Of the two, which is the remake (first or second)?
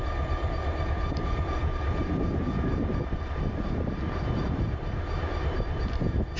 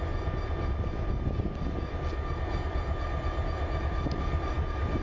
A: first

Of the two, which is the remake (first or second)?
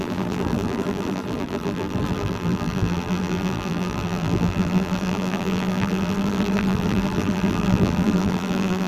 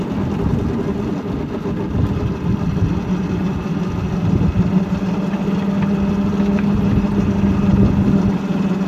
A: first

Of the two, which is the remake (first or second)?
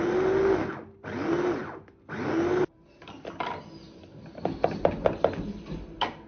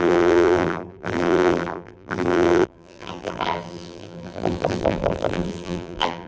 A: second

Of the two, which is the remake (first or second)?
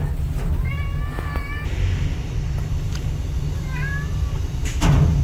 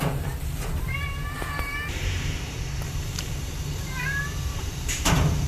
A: second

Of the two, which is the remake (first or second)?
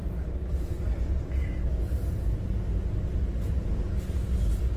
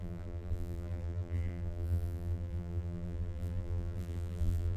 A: second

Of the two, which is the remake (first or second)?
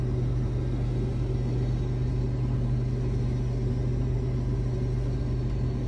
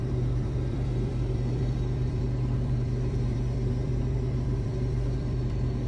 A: second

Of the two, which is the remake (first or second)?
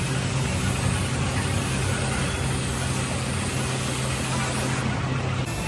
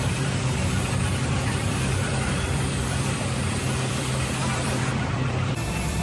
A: second